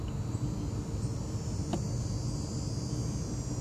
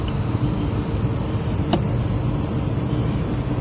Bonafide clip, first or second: first